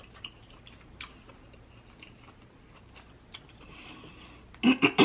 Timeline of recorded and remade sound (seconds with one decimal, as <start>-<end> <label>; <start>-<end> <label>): 0.0-5.0 recorded

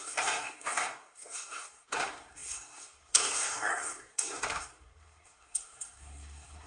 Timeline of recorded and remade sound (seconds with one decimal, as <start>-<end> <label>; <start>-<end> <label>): 0.0-6.7 remade

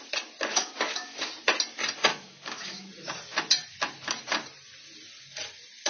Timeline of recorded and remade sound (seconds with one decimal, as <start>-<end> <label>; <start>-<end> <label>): 0.0-0.5 recorded; 0.5-1.3 remade; 1.3-2.1 recorded; 2.1-2.9 remade; 2.9-5.9 recorded

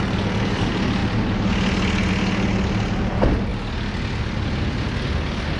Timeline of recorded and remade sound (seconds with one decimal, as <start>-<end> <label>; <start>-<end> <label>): 0.0-5.6 recorded

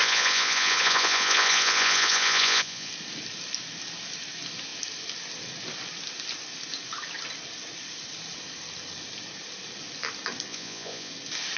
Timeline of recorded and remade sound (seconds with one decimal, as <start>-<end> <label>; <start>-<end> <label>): 0.0-2.9 remade; 2.9-10.5 recorded; 10.5-11.1 remade; 11.1-11.6 recorded

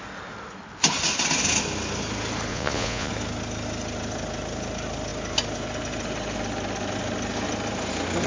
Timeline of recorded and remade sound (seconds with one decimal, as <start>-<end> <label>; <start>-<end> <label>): 0.0-2.5 recorded; 2.5-3.1 remade; 3.1-8.3 recorded